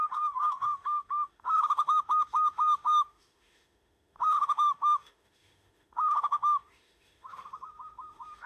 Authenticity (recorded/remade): remade